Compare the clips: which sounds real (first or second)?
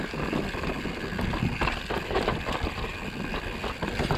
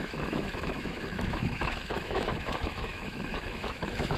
first